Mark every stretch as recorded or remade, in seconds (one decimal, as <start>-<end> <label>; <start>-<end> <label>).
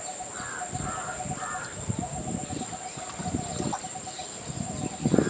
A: 0.0-5.3 recorded